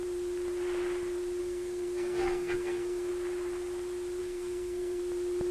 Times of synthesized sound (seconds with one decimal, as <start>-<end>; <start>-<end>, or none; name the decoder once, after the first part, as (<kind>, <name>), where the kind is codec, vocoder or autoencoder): 1.4-3.1 (codec, SNAC); 4.2-5.0